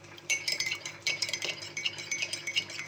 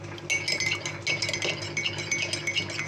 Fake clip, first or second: first